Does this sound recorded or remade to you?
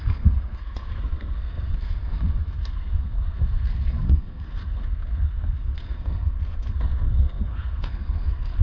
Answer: remade